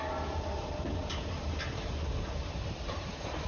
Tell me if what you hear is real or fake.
fake